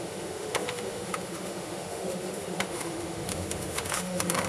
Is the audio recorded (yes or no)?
no